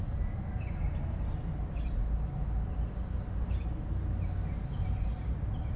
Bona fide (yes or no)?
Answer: yes